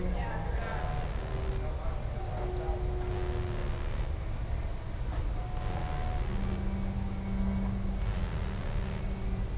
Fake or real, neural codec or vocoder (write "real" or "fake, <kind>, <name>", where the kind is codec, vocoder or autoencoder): real